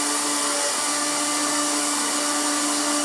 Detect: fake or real real